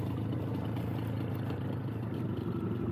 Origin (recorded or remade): recorded